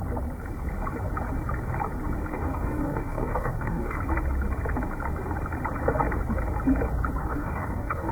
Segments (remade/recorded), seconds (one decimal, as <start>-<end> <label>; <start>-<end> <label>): 0.0-2.3 recorded; 2.3-4.0 remade; 4.0-7.2 recorded; 7.2-8.1 remade